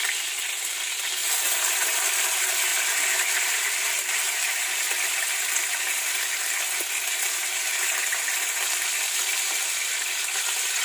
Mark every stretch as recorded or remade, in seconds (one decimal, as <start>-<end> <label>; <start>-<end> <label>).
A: 0.0-1.2 recorded; 1.2-2.0 remade; 2.0-7.1 recorded; 7.1-10.8 remade